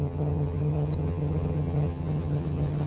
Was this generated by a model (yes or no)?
yes